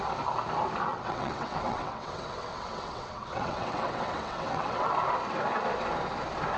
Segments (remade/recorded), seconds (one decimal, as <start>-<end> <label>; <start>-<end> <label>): 0.0-0.9 recorded; 0.9-4.9 remade; 4.9-6.6 recorded